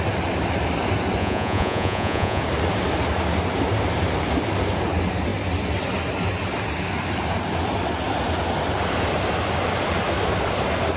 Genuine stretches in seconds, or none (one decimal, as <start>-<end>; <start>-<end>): 0.0-1.2; 2.4-11.0